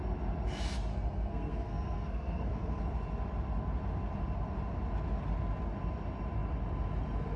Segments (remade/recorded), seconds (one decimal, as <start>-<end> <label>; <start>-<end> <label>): 0.0-0.9 recorded; 0.9-2.8 remade; 2.8-7.4 recorded